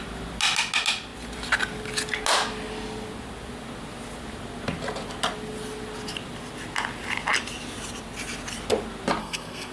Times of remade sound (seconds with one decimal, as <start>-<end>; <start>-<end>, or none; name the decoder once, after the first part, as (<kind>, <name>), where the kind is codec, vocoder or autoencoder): 9.2-9.7 (codec, SNAC)